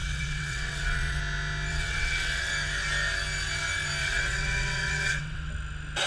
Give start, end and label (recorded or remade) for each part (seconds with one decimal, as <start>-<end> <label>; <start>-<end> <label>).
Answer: 0.0-1.2 remade; 1.2-1.7 recorded; 1.7-2.5 remade; 2.5-4.0 recorded; 4.0-5.5 remade; 5.5-6.1 recorded